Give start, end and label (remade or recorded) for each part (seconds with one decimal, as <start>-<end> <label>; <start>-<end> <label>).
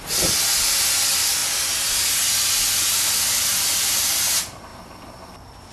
0.0-4.7 recorded; 4.7-5.7 remade